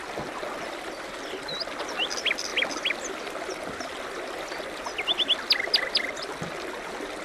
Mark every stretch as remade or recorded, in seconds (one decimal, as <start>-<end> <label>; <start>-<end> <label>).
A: 0.0-7.2 recorded